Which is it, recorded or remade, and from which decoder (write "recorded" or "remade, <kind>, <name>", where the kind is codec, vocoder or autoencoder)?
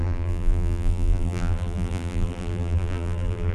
remade, vocoder, BigVGAN v2